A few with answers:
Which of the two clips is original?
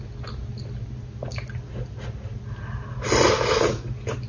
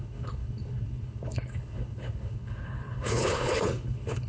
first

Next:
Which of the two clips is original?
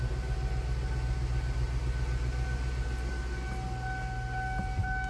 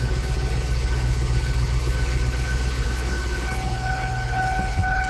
first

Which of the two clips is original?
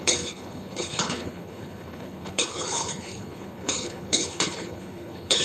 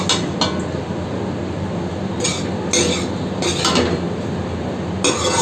second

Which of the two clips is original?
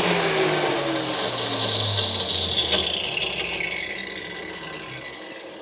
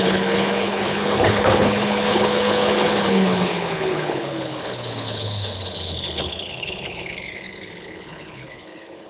first